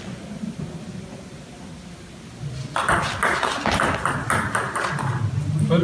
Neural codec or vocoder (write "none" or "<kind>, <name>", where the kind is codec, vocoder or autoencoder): none